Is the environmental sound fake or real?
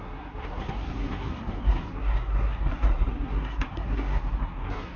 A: fake